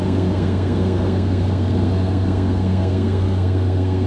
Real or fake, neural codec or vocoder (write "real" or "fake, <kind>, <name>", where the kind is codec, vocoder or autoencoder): fake, codec, SNAC